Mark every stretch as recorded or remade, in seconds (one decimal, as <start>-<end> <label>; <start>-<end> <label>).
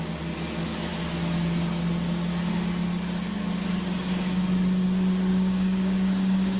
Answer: 0.0-5.3 recorded; 5.3-6.6 remade